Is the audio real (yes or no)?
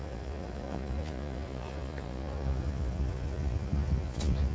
no